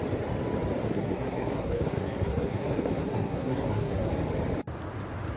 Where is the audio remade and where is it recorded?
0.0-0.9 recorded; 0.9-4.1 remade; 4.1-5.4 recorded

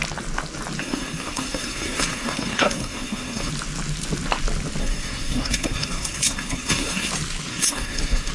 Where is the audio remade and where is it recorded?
0.0-0.8 recorded; 0.8-3.5 remade; 3.5-4.8 recorded; 4.8-7.1 remade; 7.1-7.5 recorded; 7.5-8.3 remade